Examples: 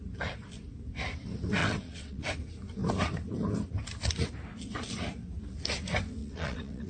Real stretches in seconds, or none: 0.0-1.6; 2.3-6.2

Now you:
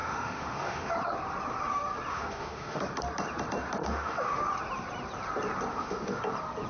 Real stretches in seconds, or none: 0.9-2.1; 2.8-3.8; 4.4-5.7; 6.2-6.7

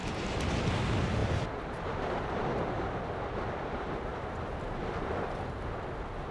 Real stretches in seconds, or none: 0.0-4.1; 4.8-6.3

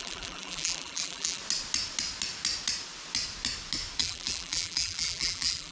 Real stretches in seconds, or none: 1.4-4.0

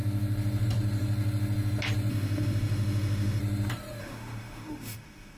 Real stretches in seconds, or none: 0.0-2.1; 3.4-4.0

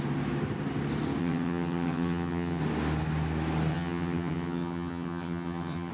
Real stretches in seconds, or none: 0.0-1.2; 2.6-3.7

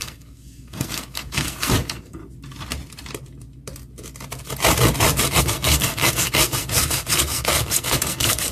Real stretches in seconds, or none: 2.2-5.4

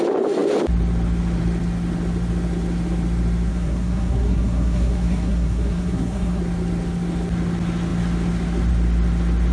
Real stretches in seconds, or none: 0.0-3.5; 6.4-9.5